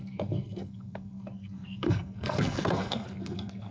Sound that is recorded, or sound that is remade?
remade